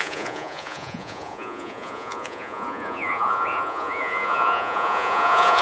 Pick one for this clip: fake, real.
fake